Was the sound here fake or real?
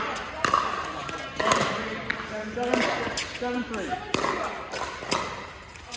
real